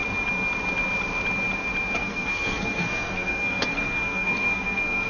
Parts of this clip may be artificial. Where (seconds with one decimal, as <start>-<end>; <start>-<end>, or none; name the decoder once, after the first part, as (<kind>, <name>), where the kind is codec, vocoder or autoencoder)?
2.0-5.1 (codec, SNAC)